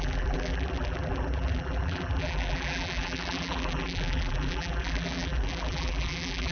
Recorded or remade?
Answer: remade